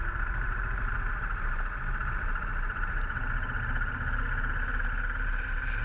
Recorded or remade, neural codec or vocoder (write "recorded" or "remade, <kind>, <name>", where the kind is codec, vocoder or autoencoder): recorded